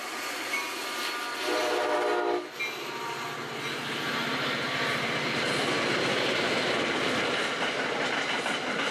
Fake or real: real